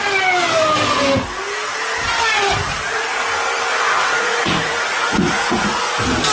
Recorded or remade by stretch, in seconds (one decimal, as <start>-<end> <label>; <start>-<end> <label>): 0.0-2.6 recorded; 2.6-3.2 remade; 3.2-3.7 recorded; 3.7-5.8 remade; 5.8-6.3 recorded